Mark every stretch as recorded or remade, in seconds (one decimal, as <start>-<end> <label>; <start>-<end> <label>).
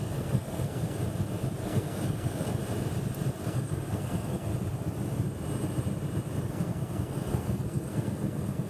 0.0-1.0 remade; 1.0-1.6 recorded; 1.6-2.6 remade; 2.6-3.4 recorded; 3.4-4.5 remade; 4.5-6.4 recorded; 6.4-8.7 remade